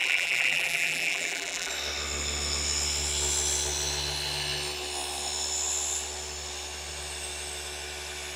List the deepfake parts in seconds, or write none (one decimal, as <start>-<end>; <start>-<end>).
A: 0.0-1.7